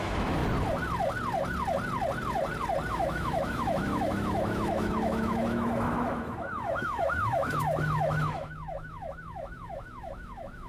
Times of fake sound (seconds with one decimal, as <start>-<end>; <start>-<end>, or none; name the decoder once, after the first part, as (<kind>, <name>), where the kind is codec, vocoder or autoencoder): 0.0-0.4 (autoencoder, DAC-VAE); 2.9-10.7